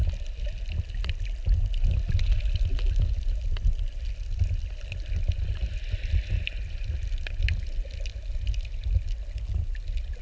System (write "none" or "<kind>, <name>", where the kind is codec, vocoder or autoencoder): none